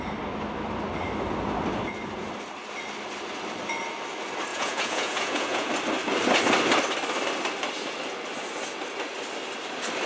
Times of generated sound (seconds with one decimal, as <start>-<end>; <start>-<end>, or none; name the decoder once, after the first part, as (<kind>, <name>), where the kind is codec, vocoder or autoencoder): 4.5-5.7 (vocoder, Vocos)